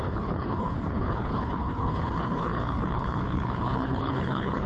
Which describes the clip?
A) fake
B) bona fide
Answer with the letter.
A